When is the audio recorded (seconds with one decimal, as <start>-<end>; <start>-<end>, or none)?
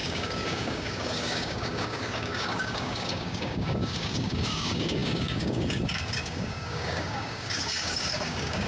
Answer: none